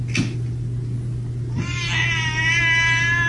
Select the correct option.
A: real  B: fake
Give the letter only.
A